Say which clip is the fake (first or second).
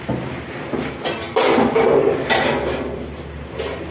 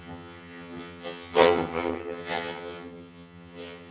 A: second